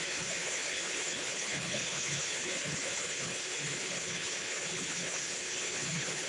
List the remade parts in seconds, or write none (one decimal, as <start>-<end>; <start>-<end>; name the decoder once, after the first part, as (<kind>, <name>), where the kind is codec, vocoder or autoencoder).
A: 0.0-6.3 (codec, HILCodec)